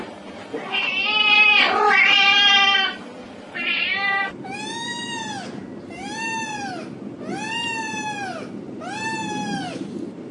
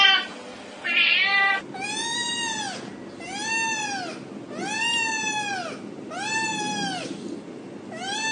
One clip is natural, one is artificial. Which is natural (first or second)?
second